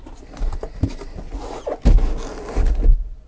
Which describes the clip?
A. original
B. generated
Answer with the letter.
A